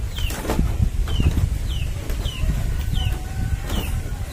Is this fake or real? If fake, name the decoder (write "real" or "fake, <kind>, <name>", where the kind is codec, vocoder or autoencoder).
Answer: real